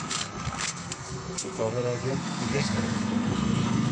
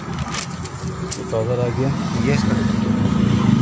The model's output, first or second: first